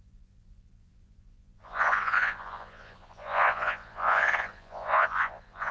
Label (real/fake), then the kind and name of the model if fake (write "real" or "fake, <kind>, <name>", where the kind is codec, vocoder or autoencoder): fake, vocoder, Vocos